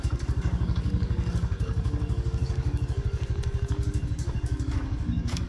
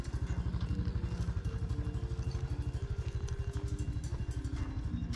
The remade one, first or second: first